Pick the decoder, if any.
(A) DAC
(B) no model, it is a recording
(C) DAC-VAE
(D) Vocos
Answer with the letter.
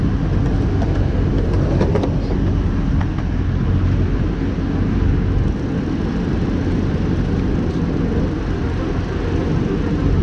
B